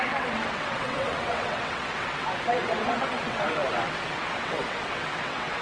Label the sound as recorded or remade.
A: remade